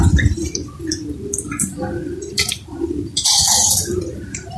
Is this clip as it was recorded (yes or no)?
no